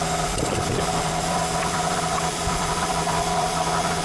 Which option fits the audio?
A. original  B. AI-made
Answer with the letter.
B